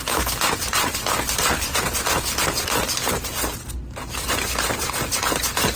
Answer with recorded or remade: recorded